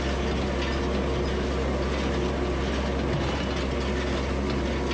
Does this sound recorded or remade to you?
recorded